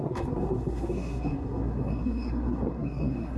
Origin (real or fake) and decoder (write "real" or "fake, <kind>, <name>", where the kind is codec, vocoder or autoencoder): fake, codec, SNAC